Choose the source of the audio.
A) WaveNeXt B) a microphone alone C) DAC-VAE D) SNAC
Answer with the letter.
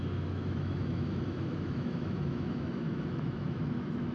C